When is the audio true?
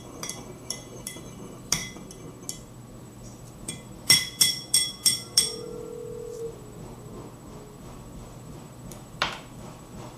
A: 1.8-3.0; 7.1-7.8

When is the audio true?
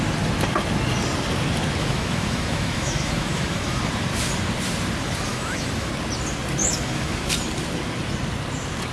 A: 0.0-1.8; 3.8-5.3; 5.9-6.6; 7.3-8.9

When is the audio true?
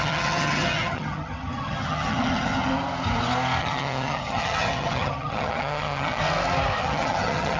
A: 2.7-3.6; 6.2-6.8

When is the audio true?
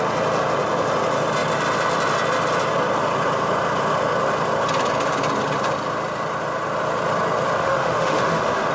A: 0.0-7.6